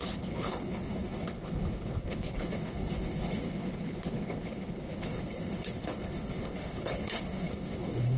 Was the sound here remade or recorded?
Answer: remade